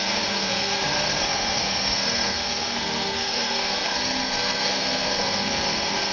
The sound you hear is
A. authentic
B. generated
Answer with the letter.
B